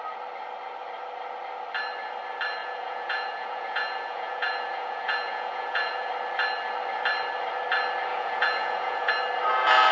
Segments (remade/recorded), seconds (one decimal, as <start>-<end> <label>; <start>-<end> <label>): 0.0-2.6 recorded; 2.6-6.1 remade; 6.1-8.1 recorded; 8.1-9.1 remade; 9.1-9.9 recorded